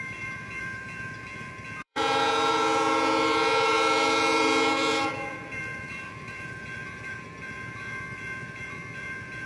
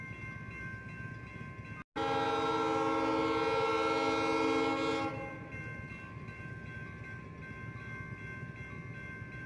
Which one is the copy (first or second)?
first